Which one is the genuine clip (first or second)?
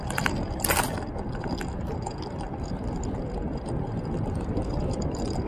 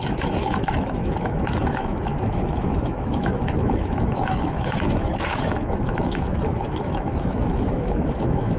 first